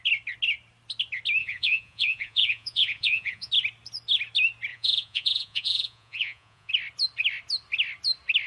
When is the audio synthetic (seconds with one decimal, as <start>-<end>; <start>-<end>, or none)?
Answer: 1.4-3.5; 4.7-6.7